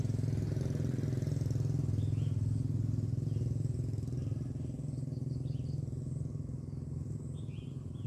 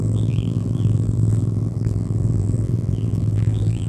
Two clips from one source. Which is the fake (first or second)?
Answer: second